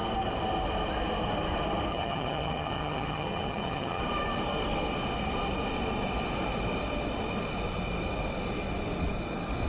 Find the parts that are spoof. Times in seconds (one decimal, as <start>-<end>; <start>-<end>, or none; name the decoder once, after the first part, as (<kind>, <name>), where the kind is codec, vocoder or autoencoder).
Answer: 1.9-4.0 (vocoder, HiFi-GAN)

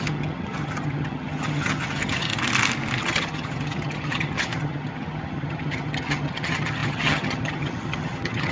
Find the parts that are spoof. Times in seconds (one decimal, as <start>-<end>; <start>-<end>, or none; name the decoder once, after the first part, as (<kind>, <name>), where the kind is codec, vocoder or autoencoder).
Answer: 0.0-2.3 (vocoder, HiFi-GAN); 3.0-8.5

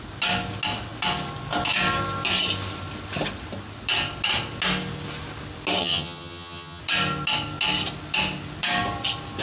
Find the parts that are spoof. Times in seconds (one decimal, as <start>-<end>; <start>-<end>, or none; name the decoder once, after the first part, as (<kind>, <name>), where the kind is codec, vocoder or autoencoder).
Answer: 5.8-6.8 (vocoder, HiFi-GAN)